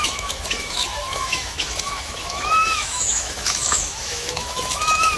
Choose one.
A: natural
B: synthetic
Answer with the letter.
B